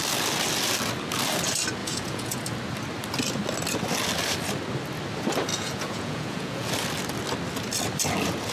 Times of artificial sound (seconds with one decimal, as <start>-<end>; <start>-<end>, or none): 1.8-2.4; 5.5-6.7